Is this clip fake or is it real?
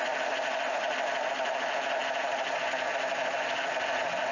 real